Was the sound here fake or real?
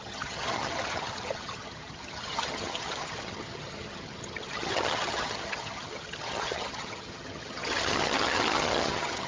fake